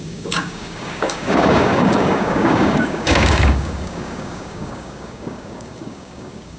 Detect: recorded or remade remade